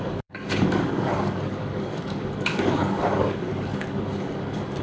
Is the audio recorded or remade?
remade